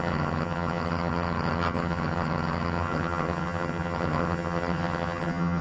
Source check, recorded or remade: remade